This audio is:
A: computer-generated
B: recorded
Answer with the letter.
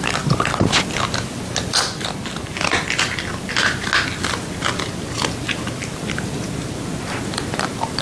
B